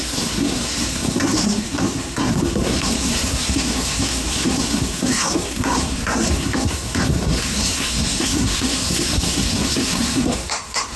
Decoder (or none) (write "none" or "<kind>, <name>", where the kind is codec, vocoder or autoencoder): codec, SNAC